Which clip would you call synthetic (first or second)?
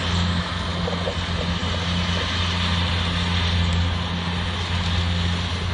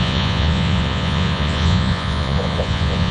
second